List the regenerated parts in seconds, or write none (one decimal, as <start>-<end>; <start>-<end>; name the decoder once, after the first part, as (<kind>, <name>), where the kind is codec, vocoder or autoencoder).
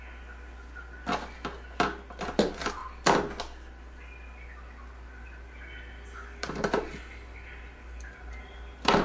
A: none